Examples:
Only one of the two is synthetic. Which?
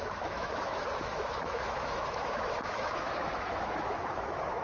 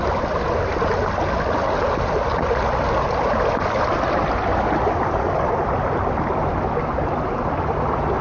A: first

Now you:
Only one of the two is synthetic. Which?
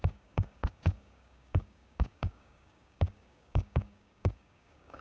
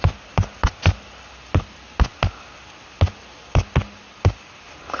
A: first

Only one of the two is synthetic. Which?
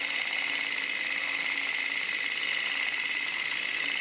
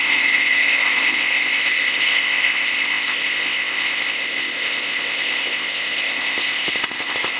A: second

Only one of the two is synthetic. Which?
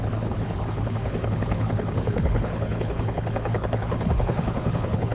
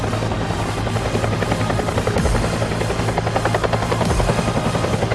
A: first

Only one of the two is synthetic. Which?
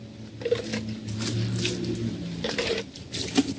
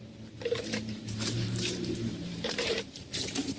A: second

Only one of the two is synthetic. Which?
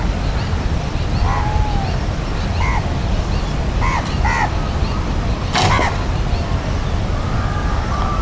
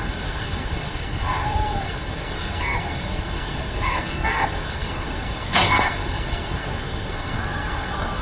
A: second